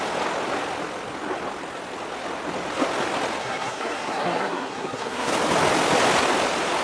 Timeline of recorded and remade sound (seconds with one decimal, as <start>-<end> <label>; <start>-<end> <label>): 0.0-3.4 recorded; 3.4-5.3 remade; 5.3-6.8 recorded